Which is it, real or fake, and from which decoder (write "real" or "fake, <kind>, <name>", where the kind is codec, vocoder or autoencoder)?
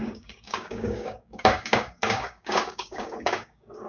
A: fake, codec, DAC